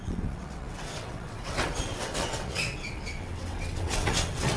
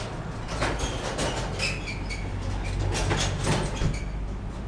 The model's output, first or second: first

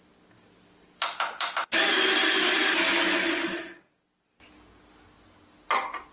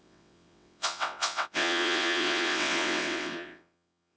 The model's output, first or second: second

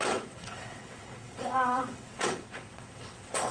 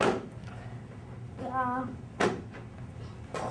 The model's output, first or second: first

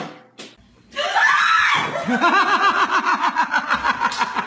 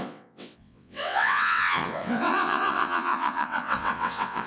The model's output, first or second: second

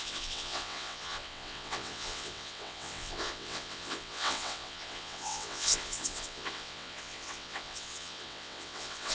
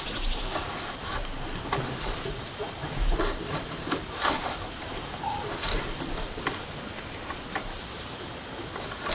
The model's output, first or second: first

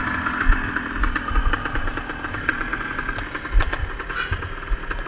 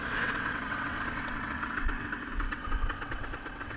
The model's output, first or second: second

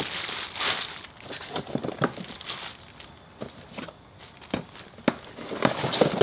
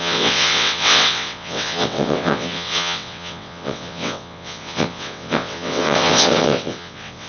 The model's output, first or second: second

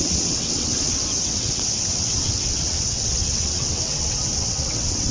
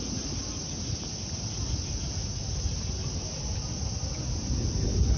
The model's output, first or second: first